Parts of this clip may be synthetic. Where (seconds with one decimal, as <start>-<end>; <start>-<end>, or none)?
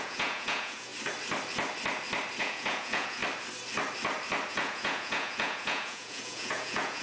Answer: 0.0-0.9; 2.4-3.2; 4.5-7.0